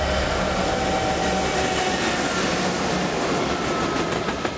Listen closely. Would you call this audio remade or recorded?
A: recorded